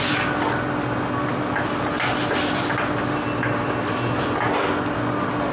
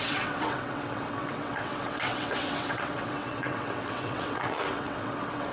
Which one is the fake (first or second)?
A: second